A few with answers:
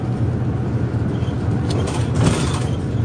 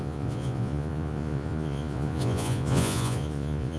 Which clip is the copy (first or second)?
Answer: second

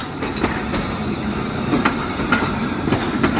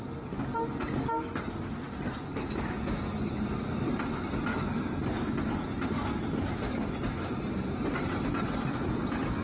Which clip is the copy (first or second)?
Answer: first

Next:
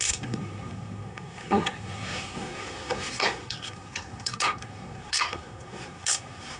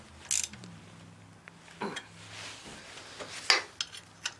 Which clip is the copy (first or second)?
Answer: first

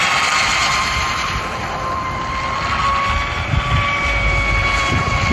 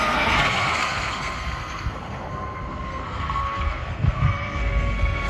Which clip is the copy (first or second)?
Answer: second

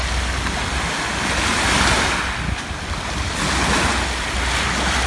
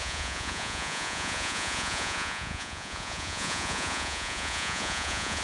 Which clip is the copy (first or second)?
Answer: second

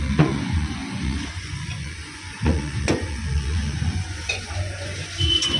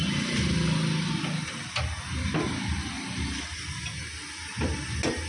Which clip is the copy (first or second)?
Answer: first